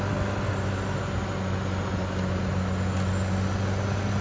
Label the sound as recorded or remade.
recorded